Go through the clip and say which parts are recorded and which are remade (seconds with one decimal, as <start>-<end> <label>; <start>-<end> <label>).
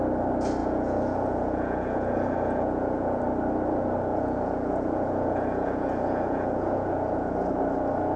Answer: 0.0-0.6 recorded; 0.6-3.2 remade; 3.2-4.1 recorded; 4.1-7.5 remade; 7.5-8.2 recorded